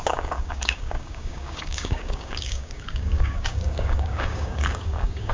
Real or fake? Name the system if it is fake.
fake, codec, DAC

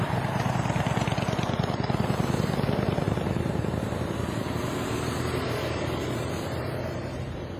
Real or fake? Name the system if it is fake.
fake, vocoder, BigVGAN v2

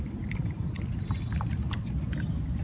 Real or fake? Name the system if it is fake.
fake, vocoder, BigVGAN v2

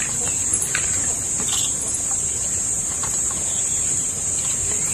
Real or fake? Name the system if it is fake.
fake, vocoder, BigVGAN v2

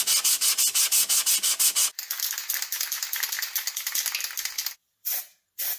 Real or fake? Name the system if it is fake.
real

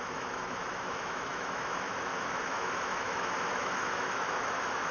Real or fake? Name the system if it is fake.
fake, autoencoder, DAC-VAE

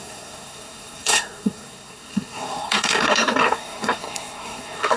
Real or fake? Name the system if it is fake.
fake, codec, SNAC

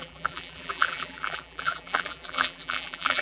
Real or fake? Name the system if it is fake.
fake, vocoder, BigVGAN v2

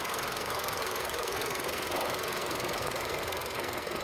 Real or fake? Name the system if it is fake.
fake, codec, SNAC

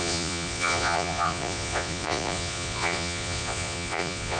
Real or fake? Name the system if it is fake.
fake, vocoder, Vocos